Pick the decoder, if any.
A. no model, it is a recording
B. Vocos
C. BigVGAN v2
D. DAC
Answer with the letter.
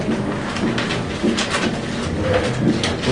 A